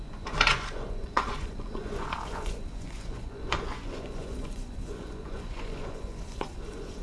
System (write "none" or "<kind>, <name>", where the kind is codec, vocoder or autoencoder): vocoder, Vocos